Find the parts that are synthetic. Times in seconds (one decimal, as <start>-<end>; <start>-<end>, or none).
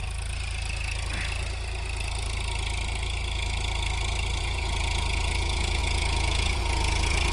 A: 4.4-7.3